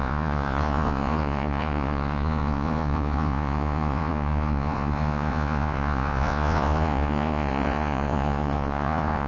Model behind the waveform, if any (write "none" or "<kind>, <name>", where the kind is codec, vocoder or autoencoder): vocoder, Vocos